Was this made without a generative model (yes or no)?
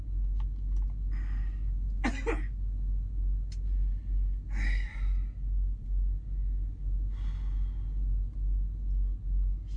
yes